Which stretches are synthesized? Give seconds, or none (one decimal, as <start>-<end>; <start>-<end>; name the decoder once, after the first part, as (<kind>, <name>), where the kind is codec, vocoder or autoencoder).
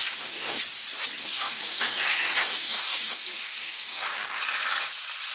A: 0.0-0.6 (codec, DAC); 1.2-4.4